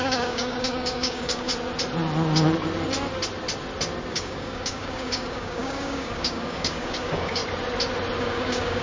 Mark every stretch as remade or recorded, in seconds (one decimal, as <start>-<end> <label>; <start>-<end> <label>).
0.0-1.5 remade; 1.5-4.1 recorded; 4.1-7.4 remade; 7.4-8.2 recorded; 8.2-8.8 remade